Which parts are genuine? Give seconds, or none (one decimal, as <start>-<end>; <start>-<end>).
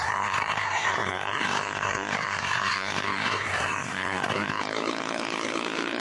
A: none